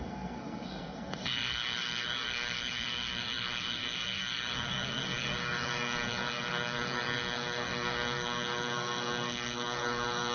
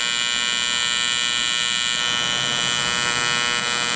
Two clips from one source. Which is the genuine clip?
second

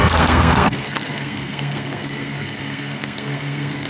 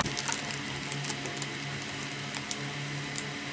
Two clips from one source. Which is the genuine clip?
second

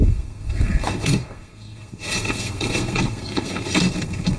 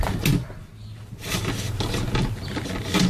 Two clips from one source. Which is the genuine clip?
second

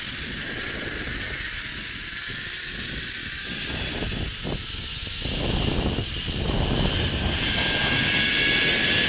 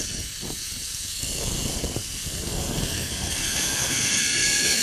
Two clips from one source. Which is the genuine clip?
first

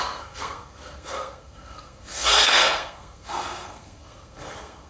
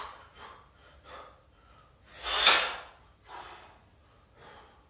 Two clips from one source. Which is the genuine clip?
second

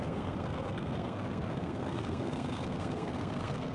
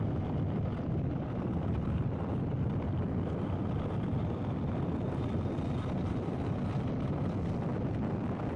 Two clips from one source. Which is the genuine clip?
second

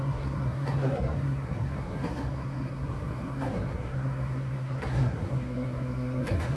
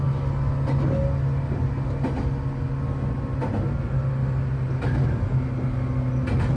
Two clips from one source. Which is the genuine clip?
second